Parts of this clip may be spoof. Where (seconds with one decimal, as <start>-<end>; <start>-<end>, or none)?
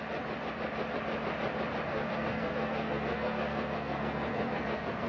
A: 1.9-5.1